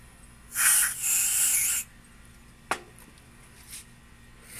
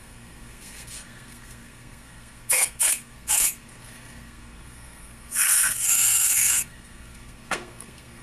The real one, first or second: first